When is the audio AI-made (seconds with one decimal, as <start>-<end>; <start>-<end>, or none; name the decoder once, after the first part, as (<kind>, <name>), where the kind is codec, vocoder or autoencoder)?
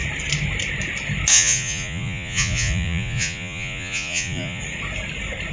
1.3-4.6 (vocoder, Vocos)